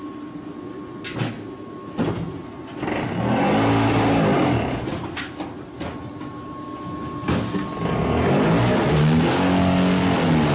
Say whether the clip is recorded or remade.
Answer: recorded